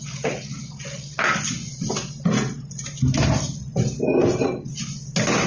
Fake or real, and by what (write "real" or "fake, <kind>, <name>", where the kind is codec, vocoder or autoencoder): real